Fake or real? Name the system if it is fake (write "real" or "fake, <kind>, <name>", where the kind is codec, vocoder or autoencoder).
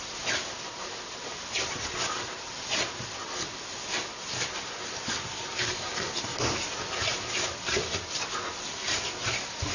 real